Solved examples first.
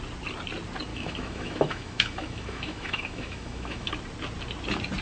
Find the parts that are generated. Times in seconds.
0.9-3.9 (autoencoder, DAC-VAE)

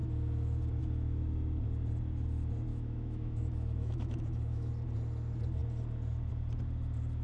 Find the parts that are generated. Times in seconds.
2.7-4.7 (autoencoder, DAC-VAE)

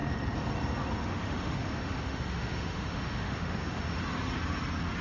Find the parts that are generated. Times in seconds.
1.0-4.0 (autoencoder, DAC-VAE)

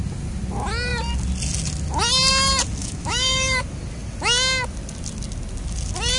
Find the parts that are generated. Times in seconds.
2.8-3.6 (autoencoder, DAC-VAE)